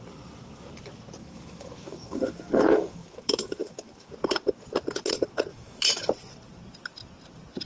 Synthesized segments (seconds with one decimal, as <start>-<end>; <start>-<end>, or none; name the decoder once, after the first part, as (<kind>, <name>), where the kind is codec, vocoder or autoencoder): 1.2-4.1 (autoencoder, DAC-VAE); 5.5-6.1